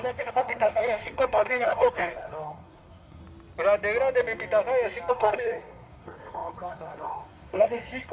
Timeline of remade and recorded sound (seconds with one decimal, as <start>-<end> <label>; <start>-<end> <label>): 0.0-3.2 remade; 3.2-5.1 recorded; 5.1-8.1 remade